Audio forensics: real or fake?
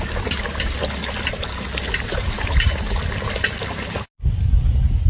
real